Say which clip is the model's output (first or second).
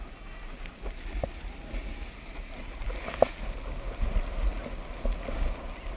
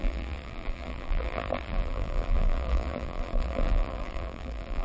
second